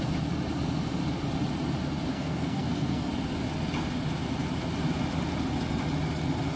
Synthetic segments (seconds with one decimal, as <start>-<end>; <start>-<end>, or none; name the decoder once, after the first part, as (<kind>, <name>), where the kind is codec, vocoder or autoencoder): 2.1-3.1 (codec, SNAC)